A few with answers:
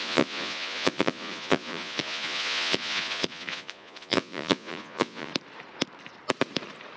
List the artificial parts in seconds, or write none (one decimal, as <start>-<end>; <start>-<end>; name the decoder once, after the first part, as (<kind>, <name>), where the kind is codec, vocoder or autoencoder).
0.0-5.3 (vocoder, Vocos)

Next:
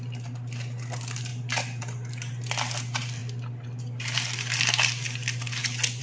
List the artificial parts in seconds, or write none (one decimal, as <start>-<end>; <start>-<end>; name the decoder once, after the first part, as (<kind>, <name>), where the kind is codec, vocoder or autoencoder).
none

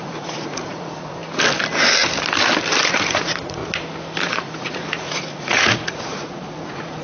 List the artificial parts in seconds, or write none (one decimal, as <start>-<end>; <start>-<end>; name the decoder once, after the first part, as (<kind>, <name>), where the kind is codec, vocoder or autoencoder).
0.0-1.2 (vocoder, Vocos); 2.9-3.6; 4.2-7.0

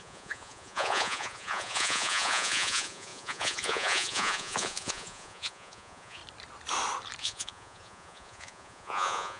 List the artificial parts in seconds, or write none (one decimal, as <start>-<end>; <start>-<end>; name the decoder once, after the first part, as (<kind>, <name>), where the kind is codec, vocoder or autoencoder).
0.0-6.2 (vocoder, Vocos); 7.2-9.4

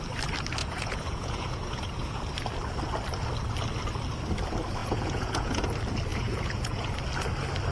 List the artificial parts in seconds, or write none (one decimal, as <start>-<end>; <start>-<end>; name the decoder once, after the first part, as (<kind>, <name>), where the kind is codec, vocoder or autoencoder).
0.6-2.2 (vocoder, Vocos); 4.8-5.6; 6.1-6.9

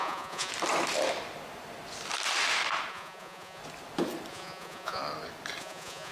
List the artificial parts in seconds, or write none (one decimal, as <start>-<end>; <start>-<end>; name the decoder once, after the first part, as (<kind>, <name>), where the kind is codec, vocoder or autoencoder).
0.0-0.5 (vocoder, Vocos); 2.9-3.6; 4.3-5.0; 5.6-6.1

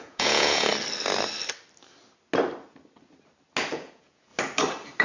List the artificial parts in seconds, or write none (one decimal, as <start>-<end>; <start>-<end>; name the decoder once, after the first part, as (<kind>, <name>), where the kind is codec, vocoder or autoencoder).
0.0-0.7 (vocoder, Vocos); 3.7-4.3